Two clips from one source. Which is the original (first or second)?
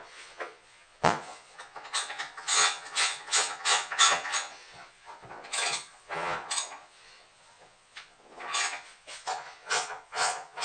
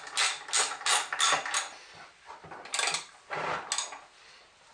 second